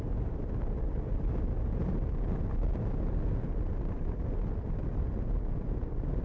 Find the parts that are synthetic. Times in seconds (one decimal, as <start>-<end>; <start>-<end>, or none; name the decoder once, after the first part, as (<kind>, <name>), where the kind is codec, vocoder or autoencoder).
none